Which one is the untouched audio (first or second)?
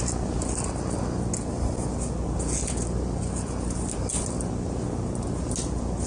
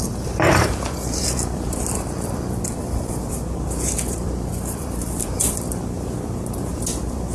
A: first